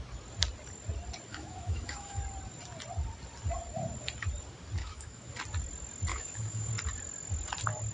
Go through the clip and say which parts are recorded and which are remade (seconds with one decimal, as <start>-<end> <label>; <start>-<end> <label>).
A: 0.0-1.3 recorded; 1.3-2.2 remade; 2.2-4.8 recorded; 4.8-5.3 remade; 5.3-6.1 recorded; 6.1-6.7 remade; 6.7-7.9 recorded